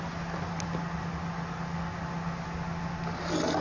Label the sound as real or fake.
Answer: real